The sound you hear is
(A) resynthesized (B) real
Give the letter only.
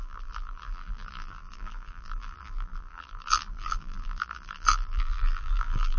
A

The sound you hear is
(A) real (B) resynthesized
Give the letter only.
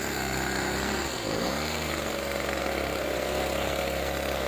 B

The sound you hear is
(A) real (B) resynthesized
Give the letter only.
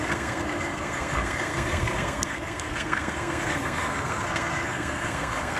B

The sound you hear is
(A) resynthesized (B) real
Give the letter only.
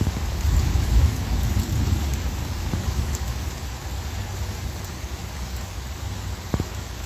A